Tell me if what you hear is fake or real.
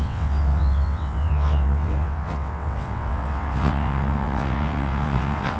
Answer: fake